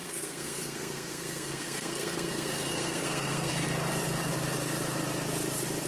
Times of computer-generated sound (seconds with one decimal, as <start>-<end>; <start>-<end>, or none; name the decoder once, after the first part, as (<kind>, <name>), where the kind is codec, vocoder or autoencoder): 0.0-3.5 (codec, SNAC)